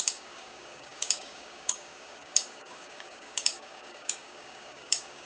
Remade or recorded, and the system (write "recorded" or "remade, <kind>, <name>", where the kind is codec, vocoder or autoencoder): remade, codec, DAC